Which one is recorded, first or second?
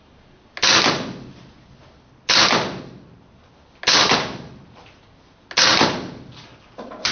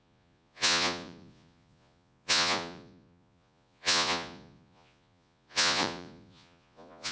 first